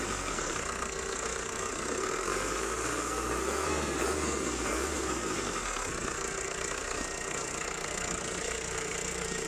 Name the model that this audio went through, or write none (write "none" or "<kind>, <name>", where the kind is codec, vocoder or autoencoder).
codec, SNAC